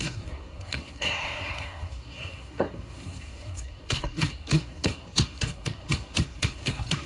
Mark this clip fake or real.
fake